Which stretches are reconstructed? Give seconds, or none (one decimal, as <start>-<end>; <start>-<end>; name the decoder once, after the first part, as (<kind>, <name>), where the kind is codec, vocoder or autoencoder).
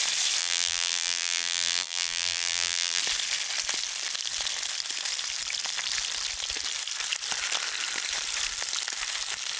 0.4-3.0 (vocoder, BigVGAN v2)